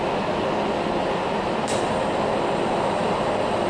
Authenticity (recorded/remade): recorded